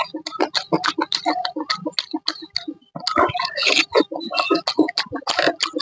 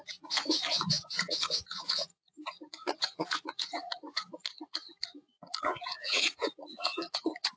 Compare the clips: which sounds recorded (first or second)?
first